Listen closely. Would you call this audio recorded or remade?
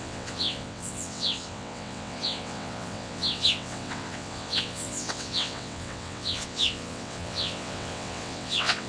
remade